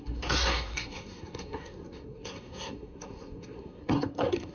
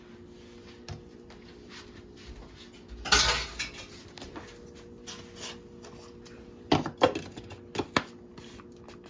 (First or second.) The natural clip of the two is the second